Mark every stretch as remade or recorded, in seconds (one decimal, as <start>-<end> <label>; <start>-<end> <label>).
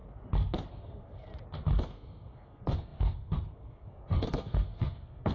0.0-0.7 recorded; 0.7-1.3 remade; 1.3-1.8 recorded; 1.8-5.3 remade